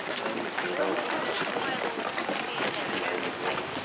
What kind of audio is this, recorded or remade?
recorded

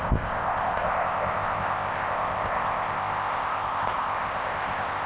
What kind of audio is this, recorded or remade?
remade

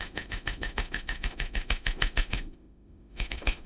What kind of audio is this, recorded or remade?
remade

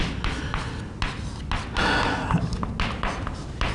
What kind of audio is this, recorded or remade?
recorded